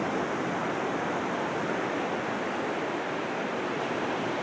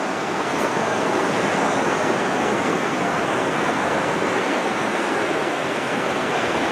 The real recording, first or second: first